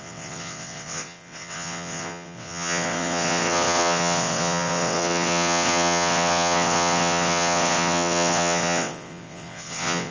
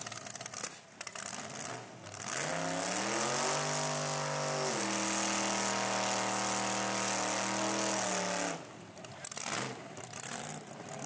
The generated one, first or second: first